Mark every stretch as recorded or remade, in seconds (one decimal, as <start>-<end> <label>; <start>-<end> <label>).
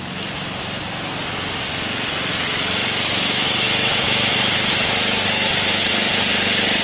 0.0-2.3 recorded; 2.3-5.9 remade; 5.9-6.8 recorded